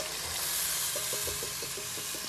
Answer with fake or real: real